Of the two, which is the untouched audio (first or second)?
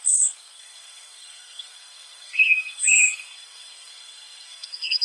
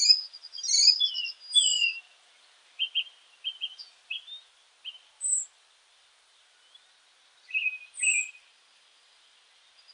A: second